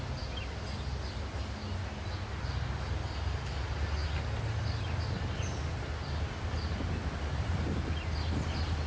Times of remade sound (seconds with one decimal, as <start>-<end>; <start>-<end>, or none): none